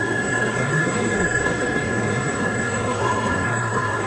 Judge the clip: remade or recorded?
remade